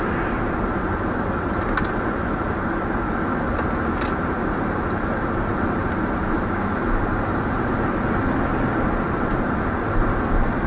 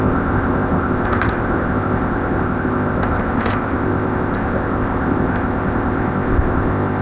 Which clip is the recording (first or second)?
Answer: first